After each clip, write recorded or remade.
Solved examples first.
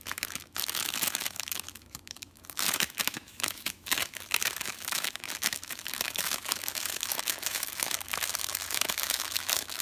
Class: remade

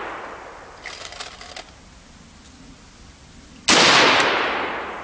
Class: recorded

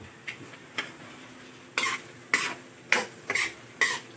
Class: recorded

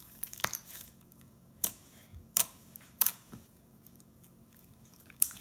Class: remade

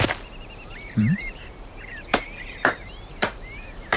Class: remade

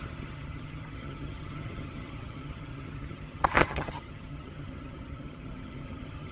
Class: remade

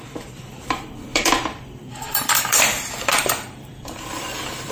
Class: remade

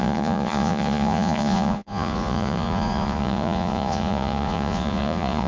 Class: remade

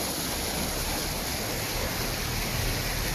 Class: recorded